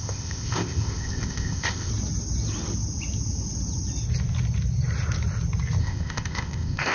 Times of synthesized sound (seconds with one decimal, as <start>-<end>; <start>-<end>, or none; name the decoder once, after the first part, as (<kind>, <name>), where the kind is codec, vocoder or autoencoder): 0.0-1.9 (codec, ZipCodec); 5.8-6.9